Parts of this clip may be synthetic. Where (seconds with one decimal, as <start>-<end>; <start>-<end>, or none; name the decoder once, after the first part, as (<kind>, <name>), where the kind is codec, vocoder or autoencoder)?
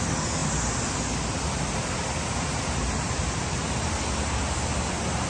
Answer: none